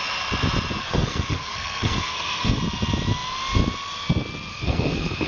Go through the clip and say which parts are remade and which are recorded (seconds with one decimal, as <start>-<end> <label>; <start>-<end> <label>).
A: 0.0-0.8 recorded; 0.8-2.6 remade; 2.6-4.5 recorded; 4.5-5.3 remade

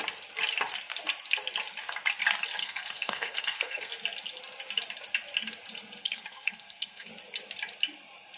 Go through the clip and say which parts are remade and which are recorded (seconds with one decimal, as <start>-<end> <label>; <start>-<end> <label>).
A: 0.0-2.6 recorded; 2.6-3.9 remade; 3.9-6.0 recorded; 6.0-7.1 remade; 7.1-8.4 recorded